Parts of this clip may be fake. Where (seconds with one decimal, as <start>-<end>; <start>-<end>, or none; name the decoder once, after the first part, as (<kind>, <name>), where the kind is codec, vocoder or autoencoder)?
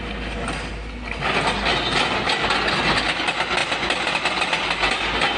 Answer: none